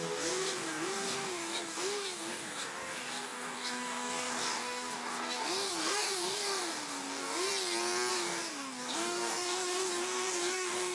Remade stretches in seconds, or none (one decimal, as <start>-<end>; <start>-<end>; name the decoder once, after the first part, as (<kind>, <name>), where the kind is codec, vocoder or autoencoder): 0.0-7.5 (codec, DAC); 8.1-10.9